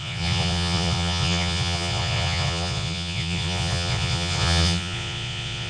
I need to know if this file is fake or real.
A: fake